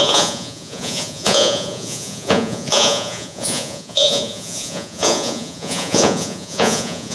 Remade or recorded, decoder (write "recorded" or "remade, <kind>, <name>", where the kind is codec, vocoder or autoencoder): remade, vocoder, Vocos